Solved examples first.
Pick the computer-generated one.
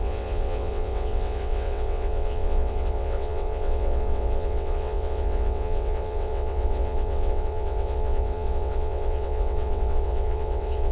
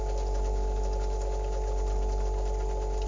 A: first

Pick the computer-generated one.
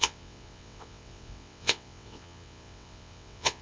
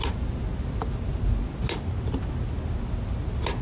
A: first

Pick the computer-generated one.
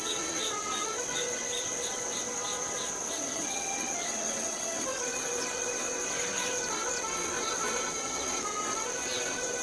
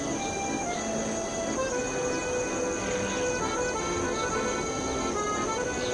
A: first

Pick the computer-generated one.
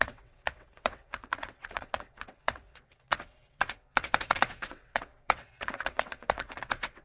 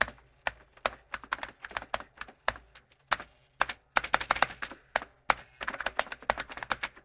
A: first